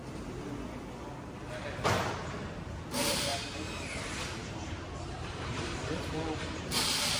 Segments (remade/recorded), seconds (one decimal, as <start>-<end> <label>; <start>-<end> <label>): 0.0-2.9 recorded; 2.9-3.3 remade; 3.3-4.5 recorded; 4.5-7.2 remade